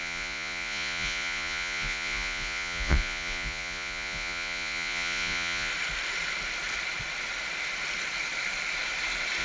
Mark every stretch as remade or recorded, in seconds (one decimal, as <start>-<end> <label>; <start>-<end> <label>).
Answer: 0.0-5.7 remade; 5.7-9.4 recorded